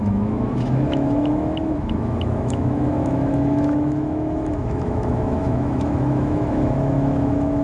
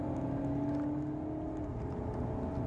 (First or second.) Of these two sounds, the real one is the second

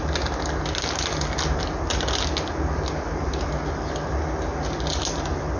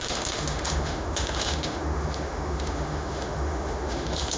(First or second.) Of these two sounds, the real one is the first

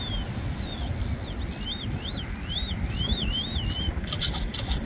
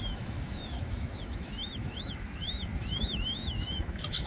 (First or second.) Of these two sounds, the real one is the first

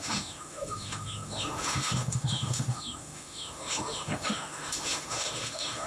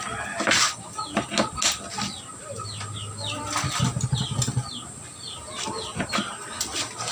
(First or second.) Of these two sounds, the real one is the second